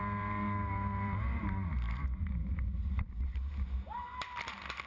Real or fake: real